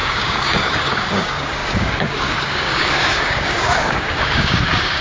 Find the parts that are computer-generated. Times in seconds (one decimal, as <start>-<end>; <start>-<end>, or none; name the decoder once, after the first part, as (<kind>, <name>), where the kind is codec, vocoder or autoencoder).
0.0-5.0 (codec, DAC)